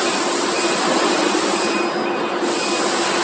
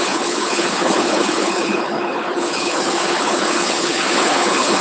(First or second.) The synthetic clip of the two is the second